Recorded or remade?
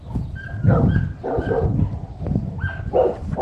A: recorded